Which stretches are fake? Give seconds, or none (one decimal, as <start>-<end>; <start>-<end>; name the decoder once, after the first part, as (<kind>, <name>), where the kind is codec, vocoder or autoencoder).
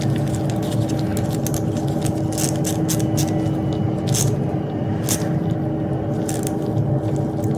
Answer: none